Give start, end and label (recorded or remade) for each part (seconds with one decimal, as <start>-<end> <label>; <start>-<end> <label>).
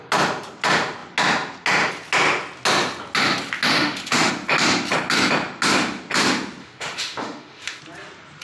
0.0-3.7 recorded; 3.7-4.3 remade; 4.3-6.6 recorded; 6.6-7.8 remade; 7.8-8.4 recorded